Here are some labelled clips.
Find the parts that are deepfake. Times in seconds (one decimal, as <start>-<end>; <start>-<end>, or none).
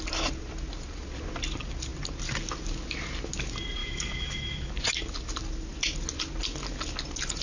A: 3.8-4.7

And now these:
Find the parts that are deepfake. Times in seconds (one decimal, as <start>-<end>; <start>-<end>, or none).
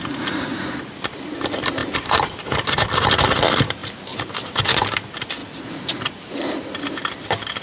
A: none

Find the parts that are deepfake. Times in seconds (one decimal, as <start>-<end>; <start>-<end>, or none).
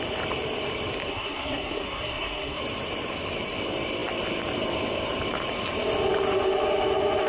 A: 1.1-2.6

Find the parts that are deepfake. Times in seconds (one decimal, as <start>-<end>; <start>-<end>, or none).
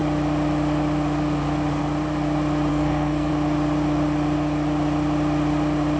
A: 2.7-3.3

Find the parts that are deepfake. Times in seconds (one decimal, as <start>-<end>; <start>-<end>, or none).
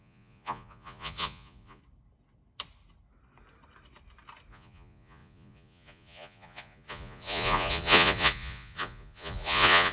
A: 0.0-1.8; 4.5-9.9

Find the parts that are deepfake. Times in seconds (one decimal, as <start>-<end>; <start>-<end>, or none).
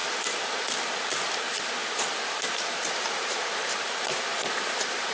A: 0.0-0.8; 1.8-5.1